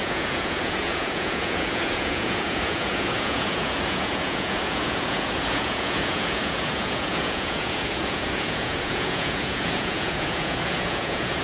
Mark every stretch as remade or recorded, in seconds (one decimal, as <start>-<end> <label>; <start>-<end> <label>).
0.0-11.4 remade